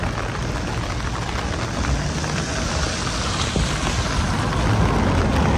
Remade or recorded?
recorded